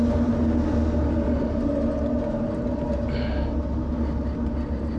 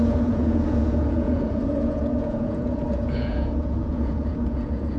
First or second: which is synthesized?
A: second